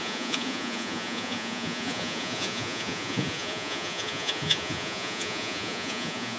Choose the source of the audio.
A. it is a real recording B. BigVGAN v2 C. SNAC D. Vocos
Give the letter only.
D